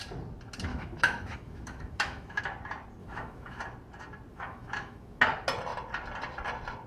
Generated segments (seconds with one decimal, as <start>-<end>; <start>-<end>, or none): 0.7-2.4; 3.0-3.6; 4.3-5.2